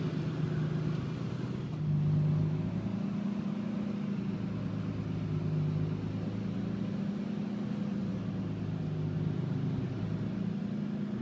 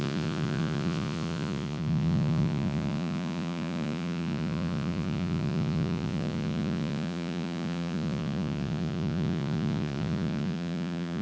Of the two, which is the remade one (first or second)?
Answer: second